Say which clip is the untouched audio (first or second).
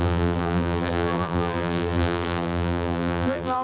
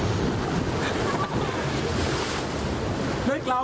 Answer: second